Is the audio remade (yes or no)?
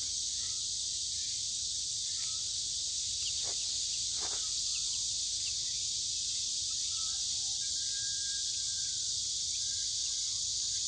yes